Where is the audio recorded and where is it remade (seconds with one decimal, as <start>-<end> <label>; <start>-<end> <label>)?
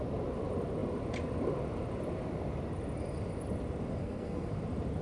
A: 0.0-4.0 recorded; 4.0-4.5 remade; 4.5-5.0 recorded